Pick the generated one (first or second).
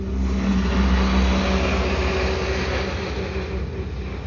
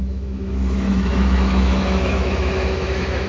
second